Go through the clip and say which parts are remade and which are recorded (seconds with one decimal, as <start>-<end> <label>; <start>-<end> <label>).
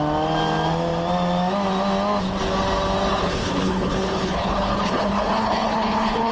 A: 0.0-3.1 recorded; 3.1-6.3 remade